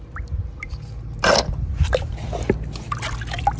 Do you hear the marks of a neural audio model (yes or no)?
no